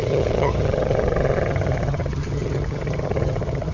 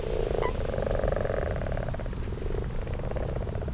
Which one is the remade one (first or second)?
first